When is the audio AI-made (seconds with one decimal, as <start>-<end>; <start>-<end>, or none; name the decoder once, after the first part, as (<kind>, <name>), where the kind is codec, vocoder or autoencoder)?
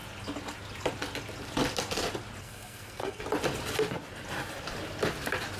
2.4-3.2 (codec, SNAC)